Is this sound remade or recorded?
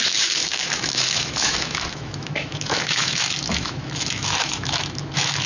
remade